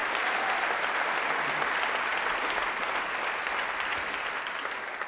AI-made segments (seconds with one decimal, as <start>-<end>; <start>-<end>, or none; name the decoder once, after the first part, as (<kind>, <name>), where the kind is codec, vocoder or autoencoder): 0.0-1.3 (vocoder, BigVGAN v2)